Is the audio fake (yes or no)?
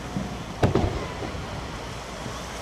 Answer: no